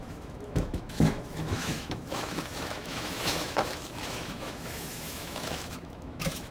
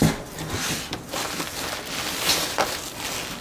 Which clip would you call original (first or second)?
second